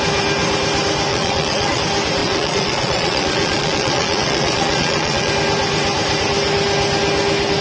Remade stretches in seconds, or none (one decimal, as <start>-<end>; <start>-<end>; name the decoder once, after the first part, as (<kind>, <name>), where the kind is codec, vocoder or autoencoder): 1.1-1.8 (vocoder, Vocos); 2.2-5.3